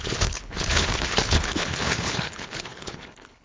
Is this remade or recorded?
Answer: remade